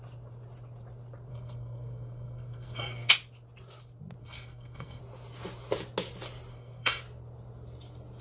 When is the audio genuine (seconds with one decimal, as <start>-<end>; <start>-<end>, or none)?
0.0-1.3; 3.1-4.2; 5.0-6.5; 7.0-8.2